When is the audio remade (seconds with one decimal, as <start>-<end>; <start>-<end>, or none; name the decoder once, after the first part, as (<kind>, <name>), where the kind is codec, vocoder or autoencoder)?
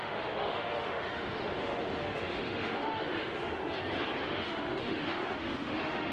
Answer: 0.0-3.6 (autoencoder, DAC-VAE); 4.2-6.1